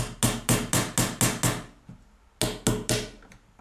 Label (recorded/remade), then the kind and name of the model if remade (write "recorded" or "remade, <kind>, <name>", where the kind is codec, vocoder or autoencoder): recorded